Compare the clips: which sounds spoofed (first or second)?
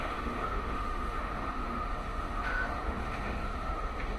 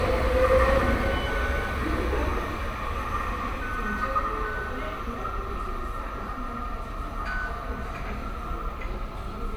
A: first